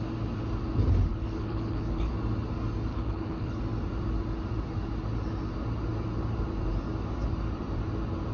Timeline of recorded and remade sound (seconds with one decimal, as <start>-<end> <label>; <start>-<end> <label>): 0.0-1.1 recorded; 1.1-2.1 remade; 2.1-2.9 recorded; 2.9-3.6 remade; 3.6-8.3 recorded